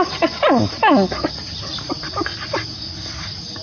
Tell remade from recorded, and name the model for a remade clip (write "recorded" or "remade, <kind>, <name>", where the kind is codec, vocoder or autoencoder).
recorded